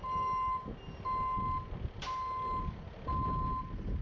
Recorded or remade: recorded